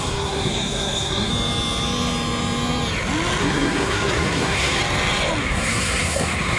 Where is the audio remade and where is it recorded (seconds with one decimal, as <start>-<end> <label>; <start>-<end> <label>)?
0.0-1.3 remade; 1.3-3.4 recorded; 3.4-4.8 remade; 4.8-5.4 recorded; 5.4-6.6 remade